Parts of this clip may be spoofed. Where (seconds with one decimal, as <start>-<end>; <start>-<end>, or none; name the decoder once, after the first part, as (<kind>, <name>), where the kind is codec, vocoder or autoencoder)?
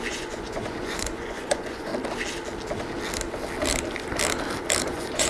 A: 0.0-1.9 (vocoder, Vocos); 4.8-5.3